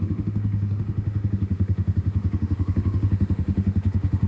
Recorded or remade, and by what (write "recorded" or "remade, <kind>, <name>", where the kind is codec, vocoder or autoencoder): remade, autoencoder, DAC-VAE